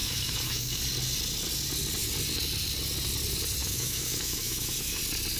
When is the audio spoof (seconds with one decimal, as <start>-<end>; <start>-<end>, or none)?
0.0-0.8; 3.6-5.0